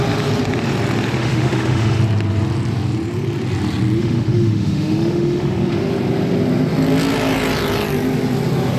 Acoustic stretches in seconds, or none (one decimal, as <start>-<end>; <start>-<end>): 0.0-1.2; 2.0-4.0; 5.9-8.8